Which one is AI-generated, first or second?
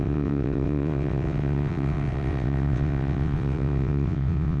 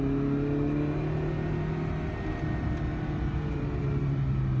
first